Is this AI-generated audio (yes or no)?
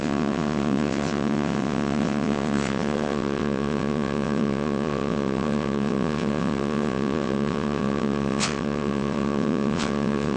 yes